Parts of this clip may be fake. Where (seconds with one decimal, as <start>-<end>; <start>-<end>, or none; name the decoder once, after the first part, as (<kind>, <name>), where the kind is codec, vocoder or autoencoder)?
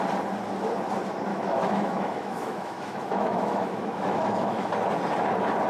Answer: 1.3-4.7 (autoencoder, DAC-VAE)